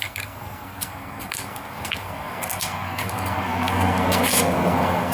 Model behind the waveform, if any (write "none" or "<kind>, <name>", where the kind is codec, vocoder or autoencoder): codec, SNAC